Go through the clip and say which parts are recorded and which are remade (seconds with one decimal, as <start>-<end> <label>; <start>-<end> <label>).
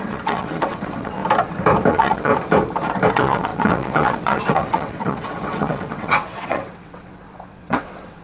0.0-1.2 remade; 1.2-1.9 recorded; 1.9-2.3 remade; 2.3-3.1 recorded; 3.1-8.2 remade